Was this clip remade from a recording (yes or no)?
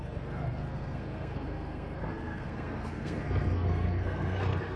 yes